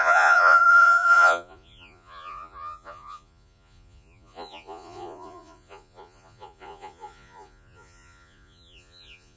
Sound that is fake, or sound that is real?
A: fake